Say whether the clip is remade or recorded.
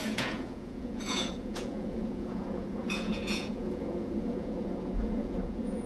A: remade